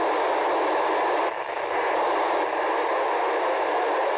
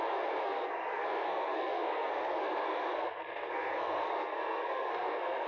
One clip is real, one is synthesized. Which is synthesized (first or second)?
second